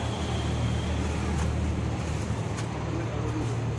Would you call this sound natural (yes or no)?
yes